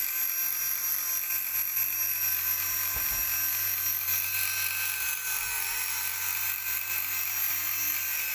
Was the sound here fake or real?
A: real